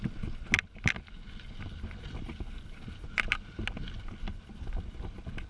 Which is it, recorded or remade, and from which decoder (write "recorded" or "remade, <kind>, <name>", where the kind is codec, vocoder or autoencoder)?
recorded